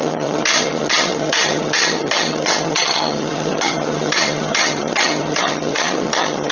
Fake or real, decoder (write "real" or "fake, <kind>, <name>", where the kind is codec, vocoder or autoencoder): fake, vocoder, HiFi-GAN